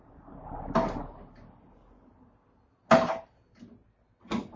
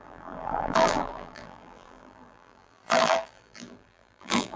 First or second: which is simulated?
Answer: second